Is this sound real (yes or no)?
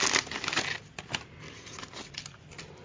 yes